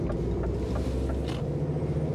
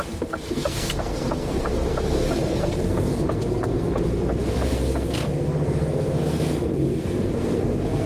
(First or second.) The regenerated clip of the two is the second